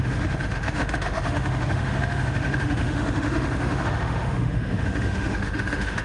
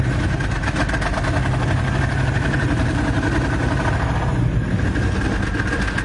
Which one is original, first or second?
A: second